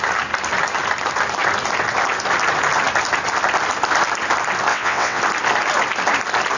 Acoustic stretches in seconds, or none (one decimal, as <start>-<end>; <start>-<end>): 0.0-4.7; 5.2-6.6